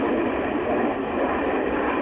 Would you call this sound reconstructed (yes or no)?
yes